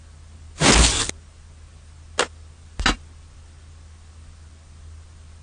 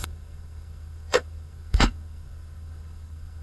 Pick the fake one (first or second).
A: second